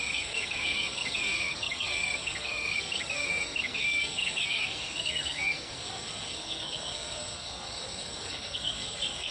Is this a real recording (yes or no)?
no